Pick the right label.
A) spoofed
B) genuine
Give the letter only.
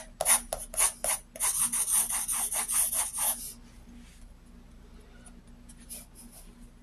B